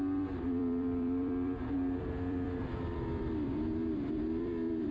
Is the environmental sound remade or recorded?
remade